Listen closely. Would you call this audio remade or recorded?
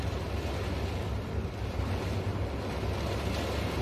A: recorded